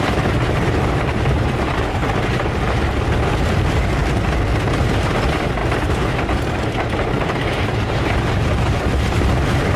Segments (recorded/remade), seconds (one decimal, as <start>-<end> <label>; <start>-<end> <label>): 0.0-2.0 remade; 2.0-3.4 recorded; 3.4-4.0 remade; 4.0-4.8 recorded; 4.8-9.8 remade